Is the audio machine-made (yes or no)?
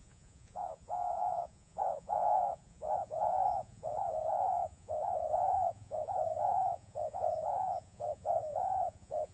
yes